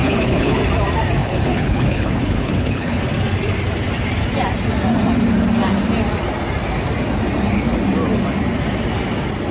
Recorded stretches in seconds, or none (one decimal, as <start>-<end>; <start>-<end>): 0.6-1.2; 3.0-9.5